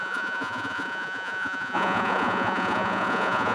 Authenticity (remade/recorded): remade